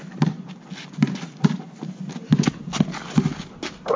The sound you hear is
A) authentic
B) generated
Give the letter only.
A